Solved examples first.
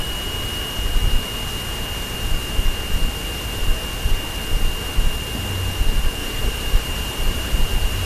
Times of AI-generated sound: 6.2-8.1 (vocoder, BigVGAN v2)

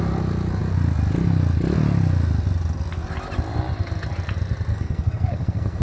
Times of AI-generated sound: 4.7-5.8 (codec, SNAC)

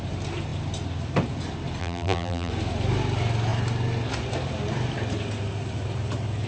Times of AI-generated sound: 1.8-2.5 (vocoder, BigVGAN v2)